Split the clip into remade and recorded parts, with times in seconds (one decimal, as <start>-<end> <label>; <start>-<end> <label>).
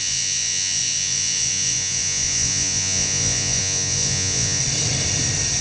0.0-4.6 remade; 4.6-5.6 recorded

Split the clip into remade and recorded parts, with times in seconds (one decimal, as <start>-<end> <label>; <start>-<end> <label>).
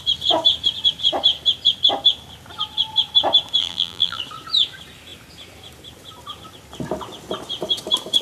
0.0-3.6 recorded; 3.6-4.2 remade; 4.2-8.2 recorded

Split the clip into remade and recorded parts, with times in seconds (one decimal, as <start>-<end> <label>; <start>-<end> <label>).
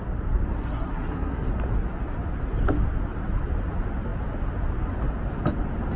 0.0-0.6 recorded; 0.6-1.5 remade; 1.5-6.0 recorded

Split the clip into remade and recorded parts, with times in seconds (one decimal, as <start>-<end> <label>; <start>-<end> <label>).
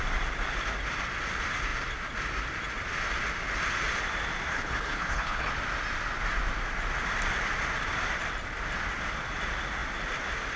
0.0-4.5 recorded; 4.5-5.5 remade; 5.5-10.6 recorded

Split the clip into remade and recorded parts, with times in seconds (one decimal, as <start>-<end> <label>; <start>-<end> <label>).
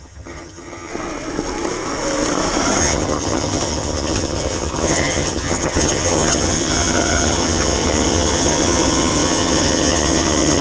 0.0-0.9 remade; 0.9-2.8 recorded; 2.8-10.6 remade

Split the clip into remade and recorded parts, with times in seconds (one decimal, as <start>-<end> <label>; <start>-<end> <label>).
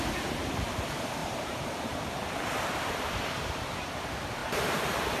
0.0-1.2 recorded; 1.2-3.9 remade; 3.9-5.2 recorded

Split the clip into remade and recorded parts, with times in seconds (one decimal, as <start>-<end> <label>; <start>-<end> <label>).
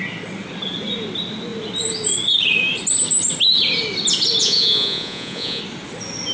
0.0-4.4 recorded; 4.4-5.6 remade; 5.6-6.3 recorded